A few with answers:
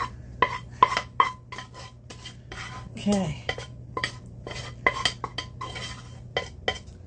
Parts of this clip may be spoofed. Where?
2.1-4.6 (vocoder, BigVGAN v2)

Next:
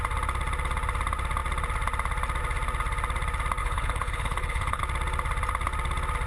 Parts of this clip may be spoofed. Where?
3.6-4.8 (codec, HILCodec)

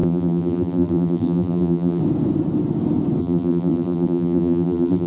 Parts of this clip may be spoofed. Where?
0.0-2.0 (vocoder, BigVGAN v2); 3.2-5.1

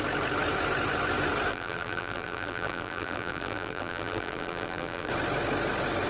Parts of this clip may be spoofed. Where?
1.5-5.1 (vocoder, BigVGAN v2)

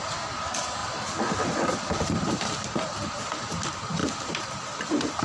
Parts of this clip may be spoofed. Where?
0.8-3.4 (vocoder, BigVGAN v2); 4.0-5.2

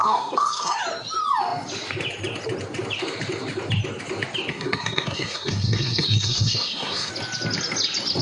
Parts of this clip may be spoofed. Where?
0.0-0.8 (codec, SNAC); 4.5-7.1